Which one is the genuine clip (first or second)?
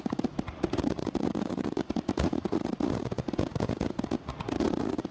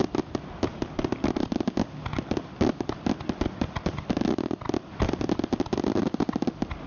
second